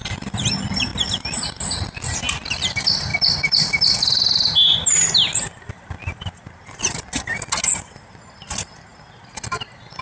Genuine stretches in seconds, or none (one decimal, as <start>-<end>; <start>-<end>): 0.0-10.0